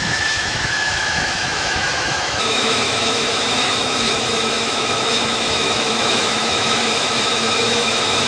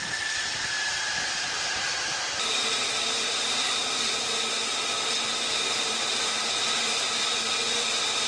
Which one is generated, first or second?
first